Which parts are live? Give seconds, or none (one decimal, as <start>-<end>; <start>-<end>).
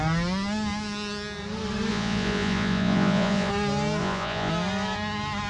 0.0-1.9; 3.5-4.0; 4.5-5.5